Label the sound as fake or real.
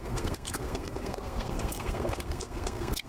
fake